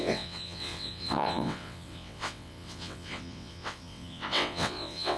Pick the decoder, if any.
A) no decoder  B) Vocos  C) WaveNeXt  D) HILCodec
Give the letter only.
C